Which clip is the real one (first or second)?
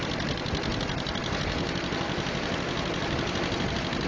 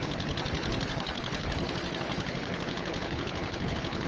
first